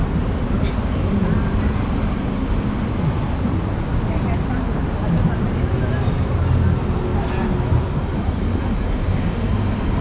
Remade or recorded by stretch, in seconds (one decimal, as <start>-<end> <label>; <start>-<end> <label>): 0.0-10.0 recorded